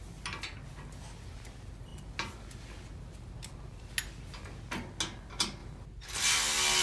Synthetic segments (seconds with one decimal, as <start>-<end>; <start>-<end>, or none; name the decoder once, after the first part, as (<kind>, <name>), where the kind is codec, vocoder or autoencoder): none